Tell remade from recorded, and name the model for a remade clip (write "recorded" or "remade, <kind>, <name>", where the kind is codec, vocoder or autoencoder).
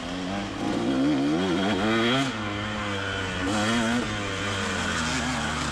recorded